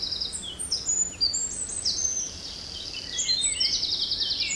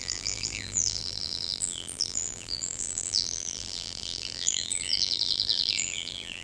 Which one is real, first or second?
first